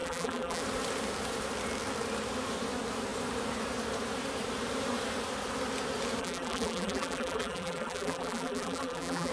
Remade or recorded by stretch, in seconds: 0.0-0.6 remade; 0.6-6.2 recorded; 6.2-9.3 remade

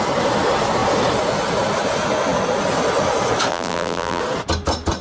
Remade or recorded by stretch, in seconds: 0.0-3.5 recorded; 3.5-4.2 remade; 4.2-5.0 recorded

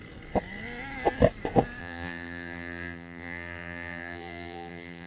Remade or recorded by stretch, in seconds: 0.0-1.8 recorded; 1.8-5.1 remade

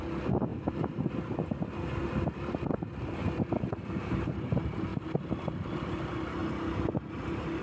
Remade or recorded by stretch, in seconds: 0.0-0.5 recorded; 0.5-1.0 remade; 1.0-2.0 recorded; 2.0-4.3 remade; 4.3-4.9 recorded; 4.9-5.5 remade; 5.5-7.6 recorded